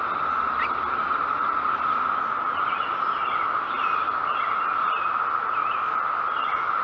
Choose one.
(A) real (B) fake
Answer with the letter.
A